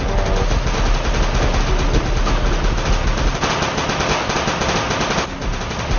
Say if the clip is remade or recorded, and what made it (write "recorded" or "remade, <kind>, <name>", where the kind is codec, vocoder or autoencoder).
recorded